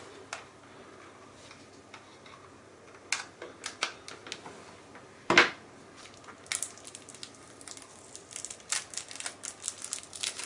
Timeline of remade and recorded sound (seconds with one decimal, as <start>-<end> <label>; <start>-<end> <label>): 0.0-10.5 recorded